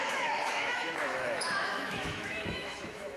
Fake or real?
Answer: fake